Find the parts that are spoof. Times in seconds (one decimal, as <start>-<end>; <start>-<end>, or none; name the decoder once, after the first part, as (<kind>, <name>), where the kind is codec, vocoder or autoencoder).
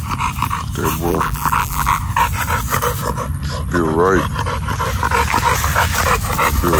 1.1-2.0 (vocoder, BigVGAN v2)